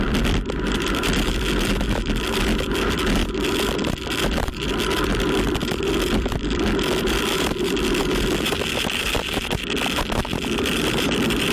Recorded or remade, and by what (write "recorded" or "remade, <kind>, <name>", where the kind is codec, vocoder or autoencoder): remade, vocoder, BigVGAN v2